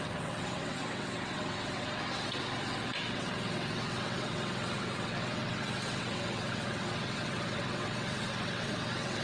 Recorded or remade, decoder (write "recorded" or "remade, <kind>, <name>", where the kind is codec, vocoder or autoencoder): remade, vocoder, WaveNeXt